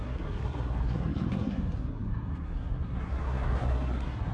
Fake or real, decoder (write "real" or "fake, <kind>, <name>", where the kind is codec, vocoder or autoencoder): fake, codec, SNAC